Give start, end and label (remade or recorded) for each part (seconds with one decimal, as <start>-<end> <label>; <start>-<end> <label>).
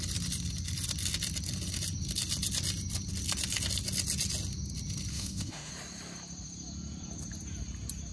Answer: 0.0-5.1 recorded; 5.1-5.7 remade; 5.7-8.1 recorded